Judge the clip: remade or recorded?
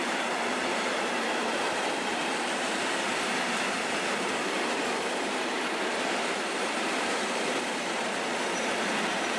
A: remade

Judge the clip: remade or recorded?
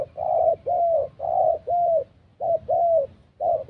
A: recorded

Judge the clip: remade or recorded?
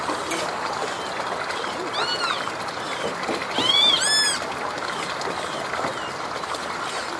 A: recorded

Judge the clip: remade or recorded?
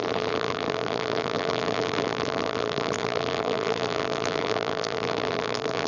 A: remade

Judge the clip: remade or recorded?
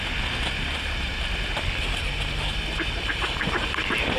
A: recorded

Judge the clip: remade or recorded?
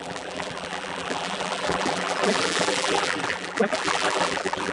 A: remade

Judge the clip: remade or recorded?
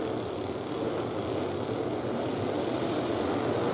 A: recorded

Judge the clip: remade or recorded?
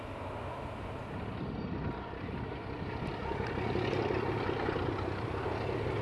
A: recorded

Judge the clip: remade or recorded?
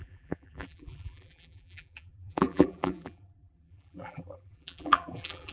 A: remade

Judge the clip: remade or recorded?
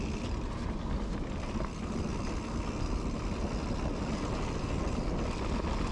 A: recorded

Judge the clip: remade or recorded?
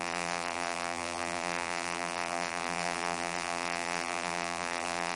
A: remade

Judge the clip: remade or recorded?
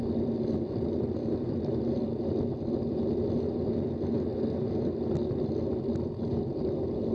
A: recorded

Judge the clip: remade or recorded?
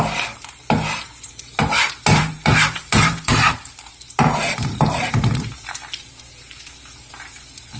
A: remade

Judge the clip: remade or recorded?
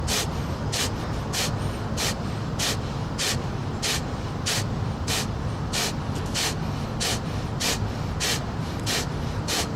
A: recorded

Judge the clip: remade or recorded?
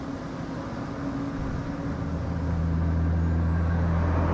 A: recorded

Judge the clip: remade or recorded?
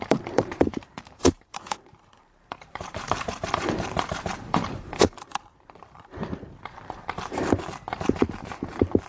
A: remade